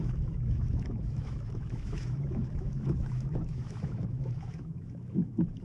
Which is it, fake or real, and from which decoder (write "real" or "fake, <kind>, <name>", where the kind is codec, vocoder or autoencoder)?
fake, autoencoder, DAC-VAE